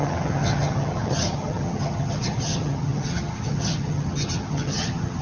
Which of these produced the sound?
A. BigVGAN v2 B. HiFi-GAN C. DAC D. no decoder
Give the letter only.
B